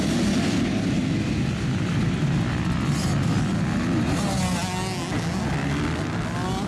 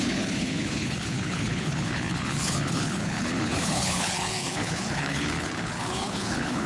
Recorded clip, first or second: first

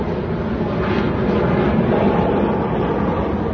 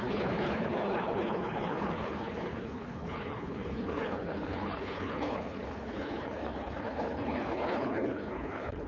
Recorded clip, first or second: first